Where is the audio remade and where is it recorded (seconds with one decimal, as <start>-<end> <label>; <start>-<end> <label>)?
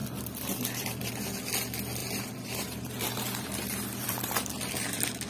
0.0-1.1 remade; 1.1-2.0 recorded; 2.0-5.3 remade